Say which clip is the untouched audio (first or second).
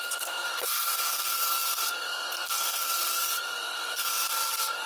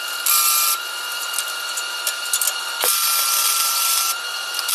second